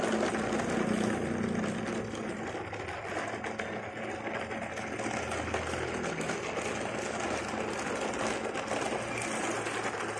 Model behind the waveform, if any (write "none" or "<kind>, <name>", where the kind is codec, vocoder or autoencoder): none